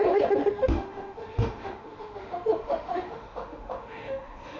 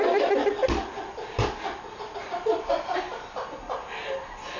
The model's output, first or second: first